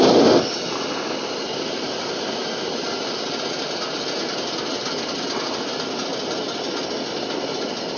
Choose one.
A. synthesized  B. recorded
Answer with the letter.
B